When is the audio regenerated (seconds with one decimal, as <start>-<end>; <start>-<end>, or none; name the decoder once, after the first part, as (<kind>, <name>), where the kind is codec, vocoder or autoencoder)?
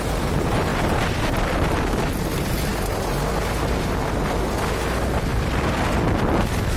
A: none